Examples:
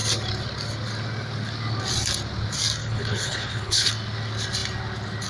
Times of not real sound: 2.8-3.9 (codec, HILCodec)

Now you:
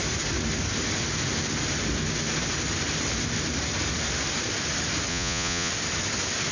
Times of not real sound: 5.1-5.7 (vocoder, Vocos)

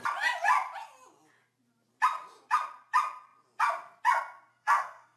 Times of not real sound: 4.5-5.2 (codec, SNAC)

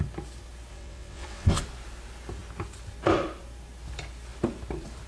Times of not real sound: 0.7-1.6 (vocoder, WaveNeXt)

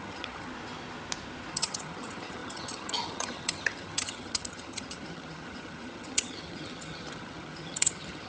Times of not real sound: 0.0-0.5 (vocoder, HiFi-GAN); 1.5-8.3

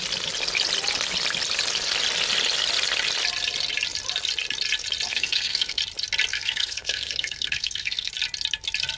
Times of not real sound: 5.1-5.8 (codec, SNAC); 6.3-8.1

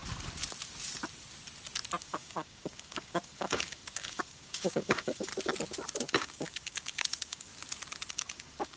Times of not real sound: 2.0-5.3 (codec, DAC); 6.0-7.5; 8.1-8.8

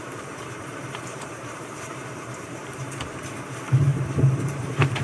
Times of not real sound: 0.0-5.0 (vocoder, BigVGAN v2)